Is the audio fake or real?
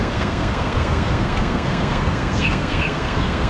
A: fake